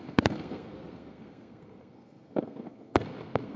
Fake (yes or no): yes